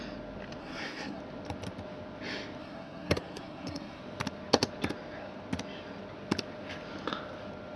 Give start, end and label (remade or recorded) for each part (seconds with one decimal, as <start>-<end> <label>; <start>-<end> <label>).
0.0-0.6 recorded; 0.6-1.2 remade; 1.2-2.6 recorded; 2.6-4.0 remade; 4.0-7.8 recorded